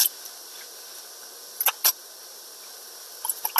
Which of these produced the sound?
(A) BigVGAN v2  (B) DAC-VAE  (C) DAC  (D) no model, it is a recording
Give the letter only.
D